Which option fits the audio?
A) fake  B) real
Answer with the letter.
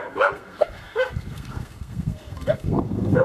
A